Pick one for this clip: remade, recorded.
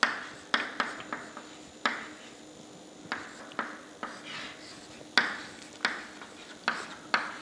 recorded